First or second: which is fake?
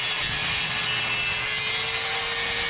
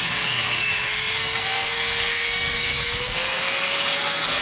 second